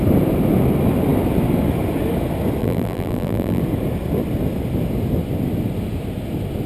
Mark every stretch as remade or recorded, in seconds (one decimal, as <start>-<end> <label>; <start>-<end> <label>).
0.0-2.6 recorded; 2.6-3.6 remade; 3.6-6.7 recorded